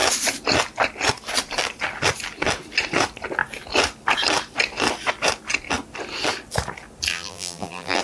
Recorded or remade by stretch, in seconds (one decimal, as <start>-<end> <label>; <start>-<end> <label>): 0.0-7.1 recorded; 7.1-8.0 remade